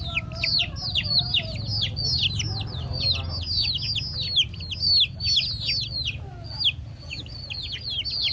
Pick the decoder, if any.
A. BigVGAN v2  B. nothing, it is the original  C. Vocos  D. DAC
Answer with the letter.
B